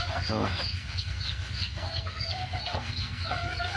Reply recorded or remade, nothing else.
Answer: remade